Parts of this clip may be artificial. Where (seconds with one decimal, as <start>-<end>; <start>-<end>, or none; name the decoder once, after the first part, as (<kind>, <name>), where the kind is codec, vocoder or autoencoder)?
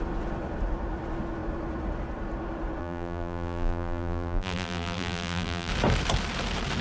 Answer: 2.8-5.7 (vocoder, BigVGAN v2)